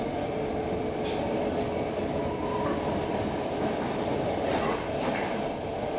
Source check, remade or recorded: recorded